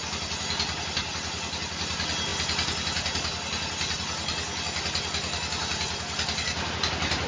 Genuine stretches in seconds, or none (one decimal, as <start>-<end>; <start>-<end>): 0.0-7.3